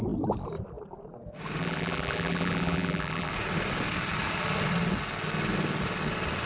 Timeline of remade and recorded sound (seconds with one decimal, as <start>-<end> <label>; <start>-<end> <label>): 0.0-1.6 recorded; 1.6-3.3 remade; 3.3-6.5 recorded